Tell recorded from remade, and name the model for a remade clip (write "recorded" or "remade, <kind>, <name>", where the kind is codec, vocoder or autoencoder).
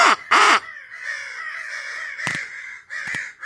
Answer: remade, vocoder, Vocos